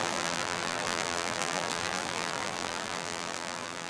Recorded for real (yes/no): no